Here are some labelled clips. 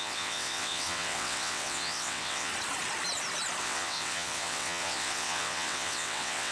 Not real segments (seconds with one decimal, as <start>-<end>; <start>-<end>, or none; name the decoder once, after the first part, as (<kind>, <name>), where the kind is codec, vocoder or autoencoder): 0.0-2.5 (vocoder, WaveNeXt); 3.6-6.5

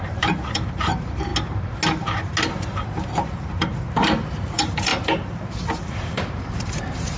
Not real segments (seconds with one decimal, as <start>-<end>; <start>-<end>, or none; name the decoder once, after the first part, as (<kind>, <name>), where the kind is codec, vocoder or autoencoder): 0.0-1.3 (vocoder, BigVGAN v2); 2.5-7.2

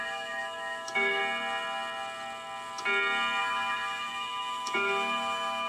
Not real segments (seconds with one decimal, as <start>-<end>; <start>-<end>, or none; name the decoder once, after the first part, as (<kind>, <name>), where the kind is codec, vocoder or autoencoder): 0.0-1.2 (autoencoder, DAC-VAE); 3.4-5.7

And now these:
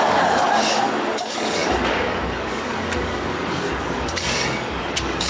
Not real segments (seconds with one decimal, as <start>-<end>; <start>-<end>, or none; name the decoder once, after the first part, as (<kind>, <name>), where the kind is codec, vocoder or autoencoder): 0.0-5.3 (codec, DAC)

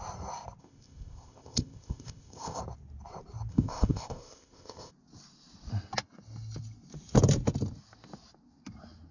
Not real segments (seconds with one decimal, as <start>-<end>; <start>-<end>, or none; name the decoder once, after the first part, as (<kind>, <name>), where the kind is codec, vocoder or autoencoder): 0.6-2.6 (codec, ZipCodec); 3.5-4.9